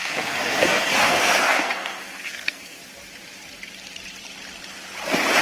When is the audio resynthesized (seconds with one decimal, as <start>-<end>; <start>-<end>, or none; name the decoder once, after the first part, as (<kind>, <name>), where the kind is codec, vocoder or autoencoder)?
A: 0.0-2.8 (codec, SNAC)

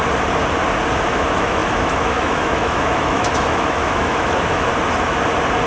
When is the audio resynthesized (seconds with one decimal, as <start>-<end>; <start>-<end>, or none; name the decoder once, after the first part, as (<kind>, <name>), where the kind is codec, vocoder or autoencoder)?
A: 1.1-4.7 (autoencoder, DAC-VAE)